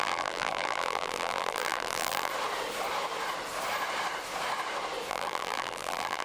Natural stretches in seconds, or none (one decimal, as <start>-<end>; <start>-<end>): 2.3-5.1